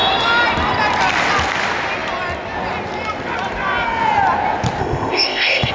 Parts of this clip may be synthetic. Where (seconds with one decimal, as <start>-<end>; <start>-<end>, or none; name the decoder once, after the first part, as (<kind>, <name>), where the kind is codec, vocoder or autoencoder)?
4.8-5.7 (codec, ZipCodec)